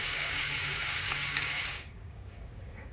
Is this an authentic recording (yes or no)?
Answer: no